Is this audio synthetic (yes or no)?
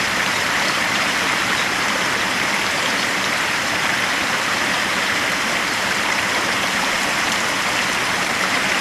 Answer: yes